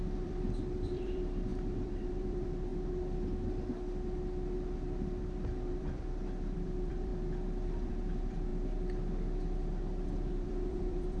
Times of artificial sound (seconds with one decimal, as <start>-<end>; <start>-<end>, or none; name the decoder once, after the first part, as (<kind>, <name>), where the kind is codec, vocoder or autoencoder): 0.0-2.7 (vocoder, BigVGAN v2); 5.7-7.1; 7.9-8.5; 10.3-11.2